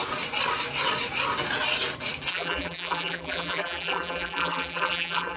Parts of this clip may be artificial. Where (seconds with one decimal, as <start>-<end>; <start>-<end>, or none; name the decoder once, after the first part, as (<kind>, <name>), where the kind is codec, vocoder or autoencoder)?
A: 2.3-5.4 (vocoder, BigVGAN v2)